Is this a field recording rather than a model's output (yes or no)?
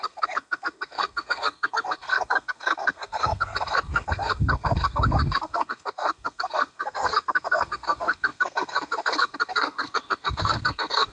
no